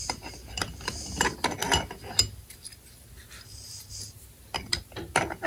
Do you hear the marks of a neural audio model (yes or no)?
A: no